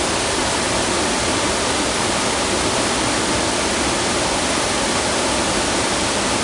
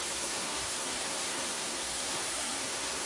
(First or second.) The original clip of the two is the first